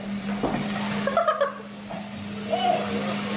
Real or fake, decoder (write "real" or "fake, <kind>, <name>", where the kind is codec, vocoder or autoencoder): real